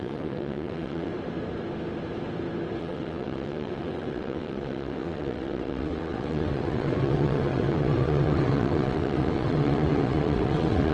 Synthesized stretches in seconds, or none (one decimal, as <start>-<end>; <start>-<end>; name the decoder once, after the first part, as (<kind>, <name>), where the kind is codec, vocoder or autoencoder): 0.0-1.1 (vocoder, WaveNeXt); 2.8-10.9